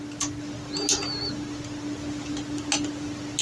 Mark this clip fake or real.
real